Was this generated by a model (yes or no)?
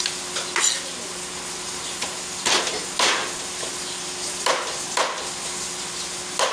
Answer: no